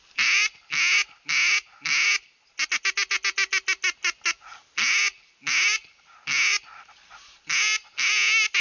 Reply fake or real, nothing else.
real